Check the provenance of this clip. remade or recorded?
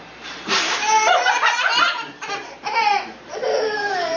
remade